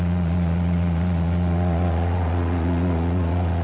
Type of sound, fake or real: fake